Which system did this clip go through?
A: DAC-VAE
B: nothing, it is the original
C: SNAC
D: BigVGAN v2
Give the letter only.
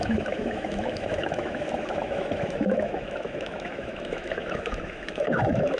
A